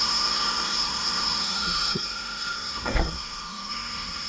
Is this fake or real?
fake